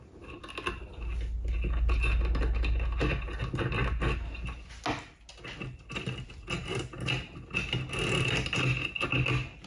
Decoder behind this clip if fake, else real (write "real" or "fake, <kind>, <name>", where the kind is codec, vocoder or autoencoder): real